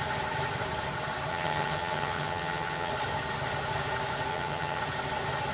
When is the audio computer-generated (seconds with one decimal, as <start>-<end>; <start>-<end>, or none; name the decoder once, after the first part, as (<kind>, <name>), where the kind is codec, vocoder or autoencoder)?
1.3-2.9 (vocoder, HiFi-GAN); 4.3-4.8

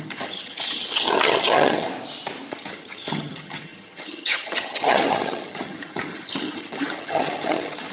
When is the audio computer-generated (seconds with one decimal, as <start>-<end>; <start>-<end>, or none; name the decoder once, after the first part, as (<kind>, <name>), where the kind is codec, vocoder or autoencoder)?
0.0-1.9 (vocoder, HiFi-GAN); 2.5-7.9

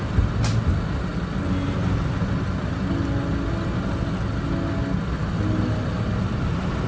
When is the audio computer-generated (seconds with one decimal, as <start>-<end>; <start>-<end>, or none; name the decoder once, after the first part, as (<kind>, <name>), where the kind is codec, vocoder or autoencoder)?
none

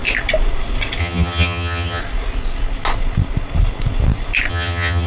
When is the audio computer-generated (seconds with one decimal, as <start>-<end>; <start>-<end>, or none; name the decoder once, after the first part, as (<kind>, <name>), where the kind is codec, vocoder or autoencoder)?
1.0-2.0 (vocoder, HiFi-GAN); 4.5-5.1